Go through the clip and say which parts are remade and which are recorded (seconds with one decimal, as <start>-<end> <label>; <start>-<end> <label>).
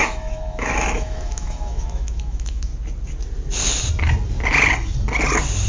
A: 0.0-2.7 remade; 2.7-5.7 recorded